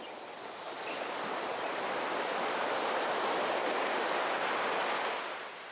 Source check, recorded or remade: recorded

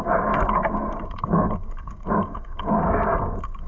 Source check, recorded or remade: remade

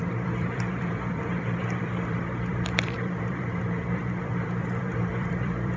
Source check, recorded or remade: remade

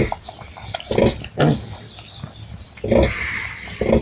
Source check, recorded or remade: recorded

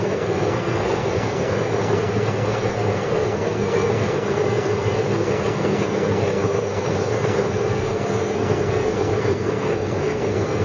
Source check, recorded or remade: remade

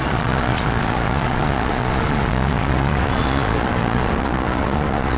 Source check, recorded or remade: remade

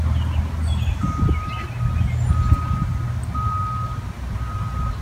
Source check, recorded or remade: recorded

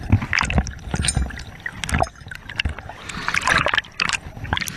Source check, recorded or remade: recorded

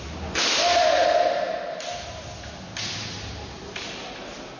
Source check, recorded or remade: recorded